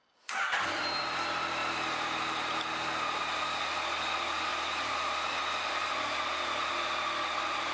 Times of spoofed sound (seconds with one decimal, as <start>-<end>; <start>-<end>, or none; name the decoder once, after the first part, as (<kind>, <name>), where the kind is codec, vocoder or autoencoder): none